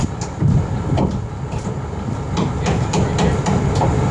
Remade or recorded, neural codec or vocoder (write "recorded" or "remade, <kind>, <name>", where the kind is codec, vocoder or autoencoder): recorded